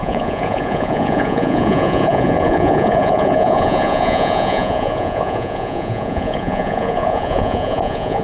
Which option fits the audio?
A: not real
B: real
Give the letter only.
A